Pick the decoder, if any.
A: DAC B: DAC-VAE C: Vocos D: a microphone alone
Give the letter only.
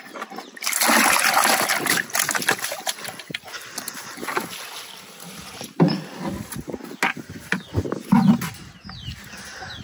D